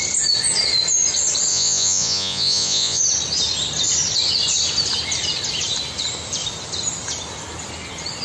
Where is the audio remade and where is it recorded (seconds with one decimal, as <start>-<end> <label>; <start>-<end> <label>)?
0.0-1.5 recorded; 1.5-3.0 remade; 3.0-8.2 recorded